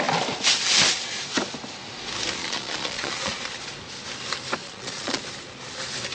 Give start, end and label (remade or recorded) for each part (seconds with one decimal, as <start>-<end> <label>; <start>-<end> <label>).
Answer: 0.0-2.4 recorded; 2.4-3.4 remade; 3.4-4.6 recorded; 4.6-5.2 remade; 5.2-6.1 recorded